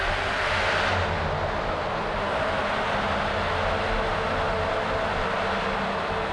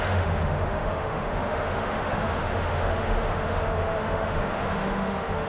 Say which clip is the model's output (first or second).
second